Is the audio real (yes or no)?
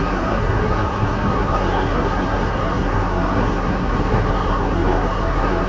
no